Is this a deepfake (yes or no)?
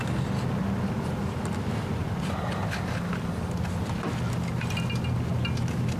no